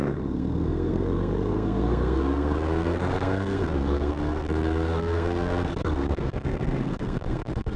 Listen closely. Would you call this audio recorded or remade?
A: remade